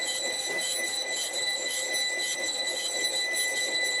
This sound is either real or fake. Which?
real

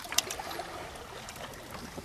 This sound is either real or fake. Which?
real